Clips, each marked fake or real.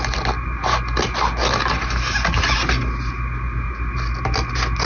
real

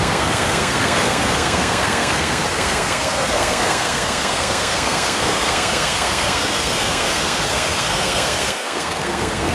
fake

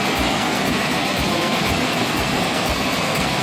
fake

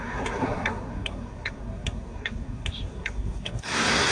fake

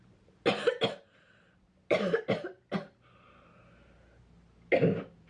real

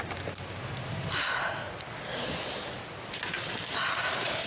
real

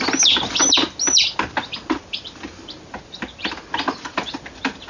real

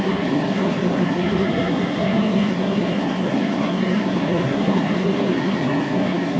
fake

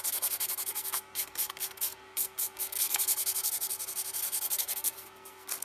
fake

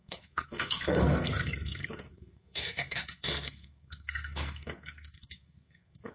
fake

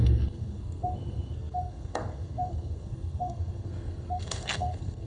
fake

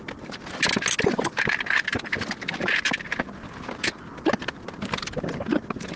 real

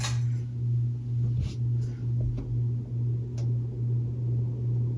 real